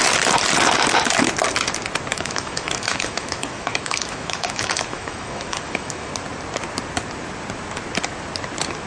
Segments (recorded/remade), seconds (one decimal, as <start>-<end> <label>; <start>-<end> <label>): 0.0-2.1 recorded; 2.1-6.1 remade; 6.1-8.9 recorded

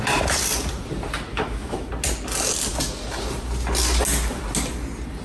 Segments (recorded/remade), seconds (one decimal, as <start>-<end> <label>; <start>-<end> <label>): 0.0-1.3 recorded; 1.3-1.9 remade; 1.9-5.2 recorded

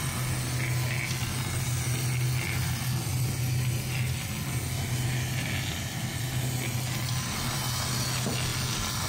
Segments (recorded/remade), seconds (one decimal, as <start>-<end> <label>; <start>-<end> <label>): 0.0-9.1 recorded

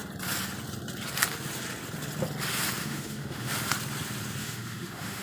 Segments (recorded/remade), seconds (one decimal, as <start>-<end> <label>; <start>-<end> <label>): 0.0-2.8 recorded; 2.8-3.5 remade; 3.5-4.4 recorded; 4.4-5.2 remade